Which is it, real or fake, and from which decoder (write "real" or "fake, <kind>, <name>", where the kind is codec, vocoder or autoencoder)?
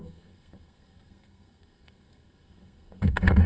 fake, codec, SNAC